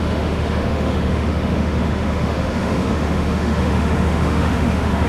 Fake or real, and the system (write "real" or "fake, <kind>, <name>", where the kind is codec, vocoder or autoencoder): fake, autoencoder, DAC-VAE